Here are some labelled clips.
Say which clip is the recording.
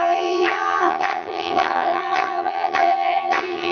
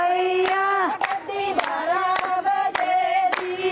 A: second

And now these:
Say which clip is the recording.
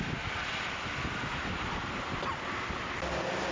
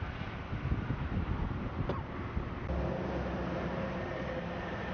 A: second